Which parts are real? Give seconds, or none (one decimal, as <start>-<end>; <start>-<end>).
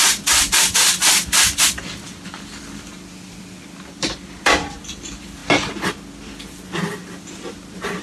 5.4-6.8